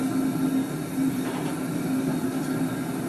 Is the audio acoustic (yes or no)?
yes